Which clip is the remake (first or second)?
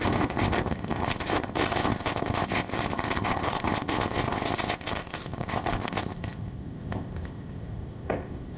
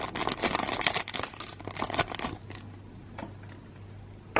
first